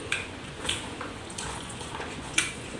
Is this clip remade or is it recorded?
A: remade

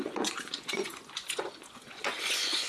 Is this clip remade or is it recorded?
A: remade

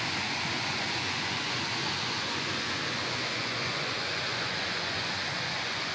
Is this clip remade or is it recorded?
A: remade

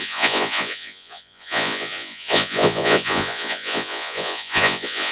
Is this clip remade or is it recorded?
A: remade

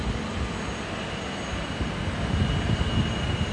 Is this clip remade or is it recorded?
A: recorded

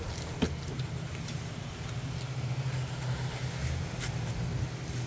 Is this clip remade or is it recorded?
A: recorded